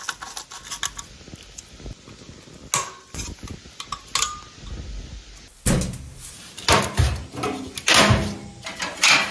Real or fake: real